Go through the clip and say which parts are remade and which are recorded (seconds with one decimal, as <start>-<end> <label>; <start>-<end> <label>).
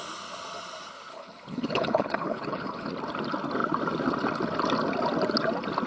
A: 0.0-1.1 recorded; 1.1-2.9 remade; 2.9-5.9 recorded